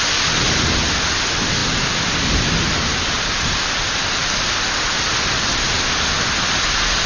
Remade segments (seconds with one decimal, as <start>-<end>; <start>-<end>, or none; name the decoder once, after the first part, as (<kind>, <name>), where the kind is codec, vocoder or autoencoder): 1.6-5.9 (vocoder, BigVGAN v2)

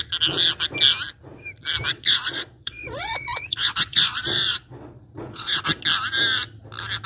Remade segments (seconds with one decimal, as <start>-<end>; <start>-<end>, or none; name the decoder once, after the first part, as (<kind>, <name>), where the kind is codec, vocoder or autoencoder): 1.9-5.6 (vocoder, Vocos)